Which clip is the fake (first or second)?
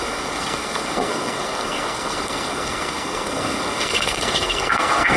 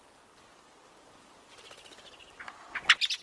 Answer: first